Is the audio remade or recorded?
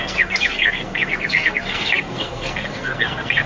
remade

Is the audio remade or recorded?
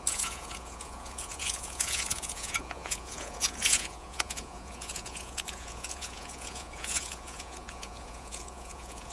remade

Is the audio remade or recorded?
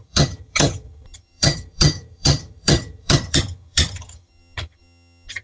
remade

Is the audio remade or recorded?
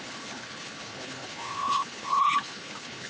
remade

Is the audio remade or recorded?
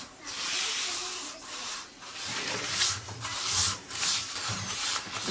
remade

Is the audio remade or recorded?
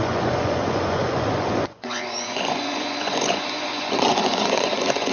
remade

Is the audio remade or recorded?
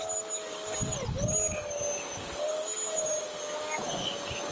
recorded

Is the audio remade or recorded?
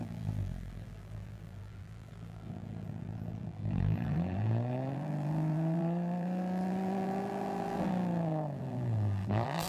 remade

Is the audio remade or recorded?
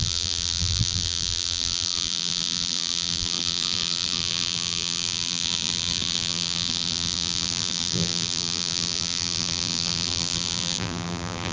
remade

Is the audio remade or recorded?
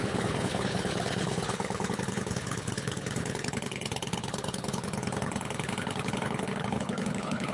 remade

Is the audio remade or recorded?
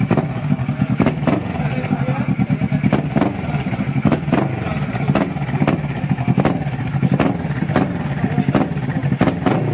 recorded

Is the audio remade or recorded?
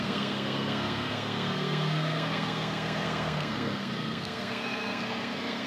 remade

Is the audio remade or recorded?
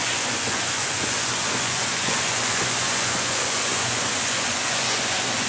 remade